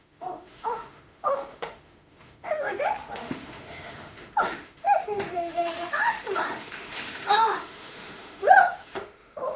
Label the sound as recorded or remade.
remade